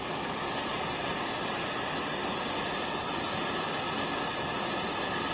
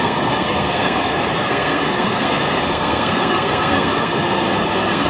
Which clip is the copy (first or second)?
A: second